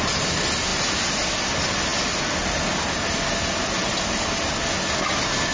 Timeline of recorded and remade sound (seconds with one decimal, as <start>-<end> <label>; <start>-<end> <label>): 0.0-5.5 recorded